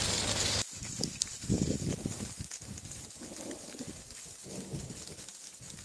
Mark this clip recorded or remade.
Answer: remade